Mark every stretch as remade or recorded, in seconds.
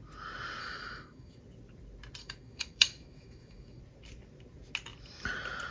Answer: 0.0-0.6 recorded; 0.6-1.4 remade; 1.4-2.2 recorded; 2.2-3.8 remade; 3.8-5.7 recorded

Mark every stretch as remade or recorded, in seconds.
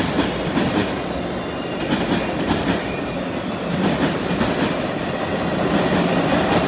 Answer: 0.0-6.7 recorded